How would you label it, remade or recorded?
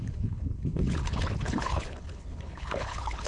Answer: remade